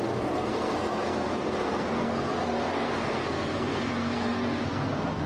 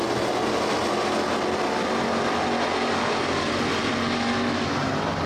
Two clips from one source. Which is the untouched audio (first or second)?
second